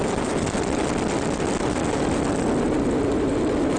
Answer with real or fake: real